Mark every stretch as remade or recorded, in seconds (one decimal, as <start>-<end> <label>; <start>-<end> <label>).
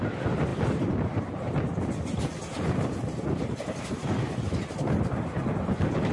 0.0-6.1 recorded